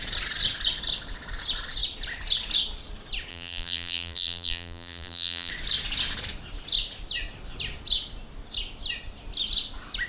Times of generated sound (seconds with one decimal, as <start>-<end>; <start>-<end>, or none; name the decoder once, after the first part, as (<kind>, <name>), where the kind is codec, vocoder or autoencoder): 3.3-5.5 (vocoder, BigVGAN v2)